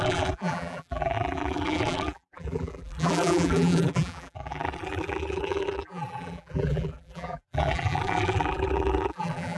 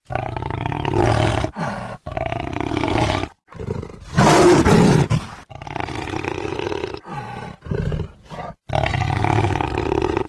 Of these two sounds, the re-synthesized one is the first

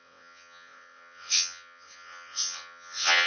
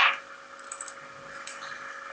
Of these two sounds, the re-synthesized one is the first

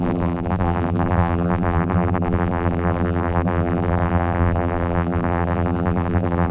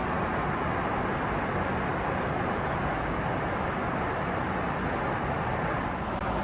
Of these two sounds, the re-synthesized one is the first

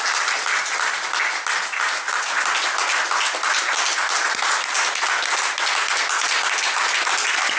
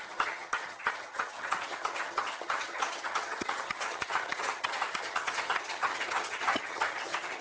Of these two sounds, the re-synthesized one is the second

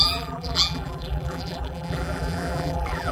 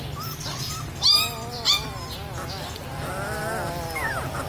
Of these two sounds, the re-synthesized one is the first